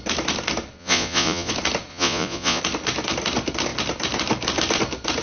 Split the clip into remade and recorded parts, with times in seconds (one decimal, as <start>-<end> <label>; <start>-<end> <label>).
0.0-0.8 recorded; 0.8-1.5 remade; 1.5-1.9 recorded; 1.9-2.6 remade; 2.6-5.2 recorded